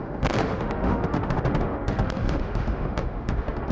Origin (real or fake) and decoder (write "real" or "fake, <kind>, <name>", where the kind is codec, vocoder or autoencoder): fake, autoencoder, DAC-VAE